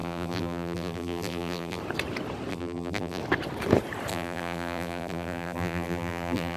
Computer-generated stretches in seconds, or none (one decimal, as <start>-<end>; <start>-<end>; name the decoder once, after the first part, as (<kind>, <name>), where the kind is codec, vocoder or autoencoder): 0.0-1.8 (vocoder, BigVGAN v2); 2.5-3.2; 4.1-6.6